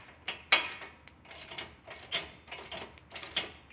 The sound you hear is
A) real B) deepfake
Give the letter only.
A